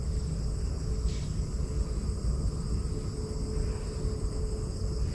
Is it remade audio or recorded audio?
recorded